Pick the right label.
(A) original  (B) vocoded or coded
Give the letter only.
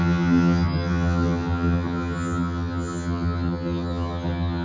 B